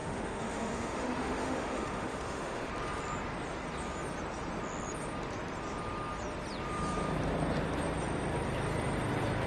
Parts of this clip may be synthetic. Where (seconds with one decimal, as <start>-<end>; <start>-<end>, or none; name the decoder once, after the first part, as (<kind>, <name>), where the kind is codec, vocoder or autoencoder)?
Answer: 0.0-2.7 (autoencoder, DAC-VAE)